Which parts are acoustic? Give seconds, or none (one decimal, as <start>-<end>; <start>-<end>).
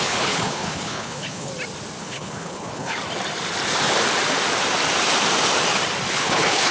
1.5-2.0; 3.0-6.1